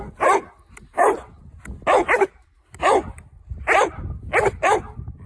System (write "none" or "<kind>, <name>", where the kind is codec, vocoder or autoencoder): none